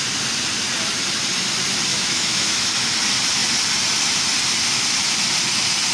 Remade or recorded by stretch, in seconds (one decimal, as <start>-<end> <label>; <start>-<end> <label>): 0.0-1.9 recorded; 1.9-2.7 remade; 2.7-5.9 recorded